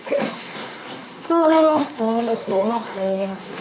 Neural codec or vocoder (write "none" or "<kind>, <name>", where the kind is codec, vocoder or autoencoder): codec, SNAC